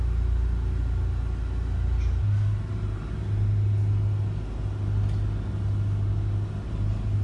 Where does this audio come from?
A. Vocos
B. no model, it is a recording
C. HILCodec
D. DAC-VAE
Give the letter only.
B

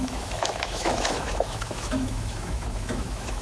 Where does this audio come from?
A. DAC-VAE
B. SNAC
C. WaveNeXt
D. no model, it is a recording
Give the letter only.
A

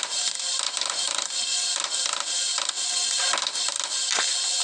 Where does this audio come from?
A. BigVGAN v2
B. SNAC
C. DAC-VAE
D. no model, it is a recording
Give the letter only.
D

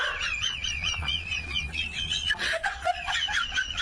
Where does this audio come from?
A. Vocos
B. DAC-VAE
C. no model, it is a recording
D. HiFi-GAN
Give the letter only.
A